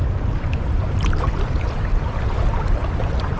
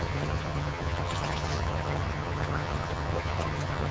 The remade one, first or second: second